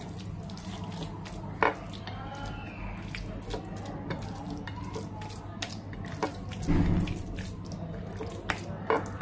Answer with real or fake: real